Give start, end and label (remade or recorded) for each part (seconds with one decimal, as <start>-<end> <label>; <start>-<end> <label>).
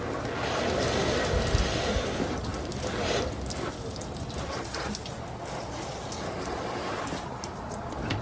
0.0-8.2 recorded